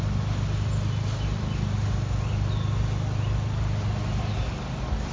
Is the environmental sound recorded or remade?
recorded